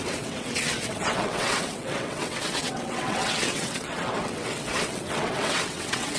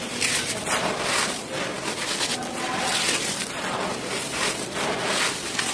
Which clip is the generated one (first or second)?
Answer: first